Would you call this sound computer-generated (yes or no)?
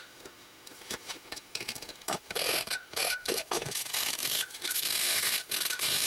yes